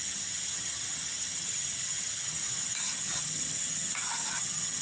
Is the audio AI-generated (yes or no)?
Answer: yes